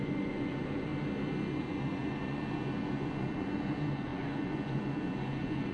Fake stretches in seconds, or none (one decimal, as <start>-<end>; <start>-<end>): 0.0-0.9; 1.6-5.7